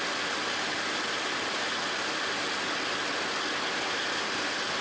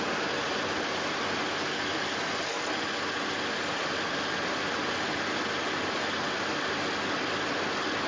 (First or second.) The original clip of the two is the second